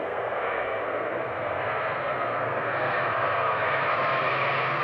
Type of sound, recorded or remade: remade